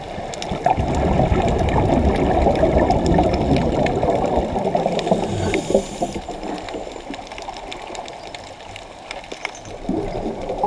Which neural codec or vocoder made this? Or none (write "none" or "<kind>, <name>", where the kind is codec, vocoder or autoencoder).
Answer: none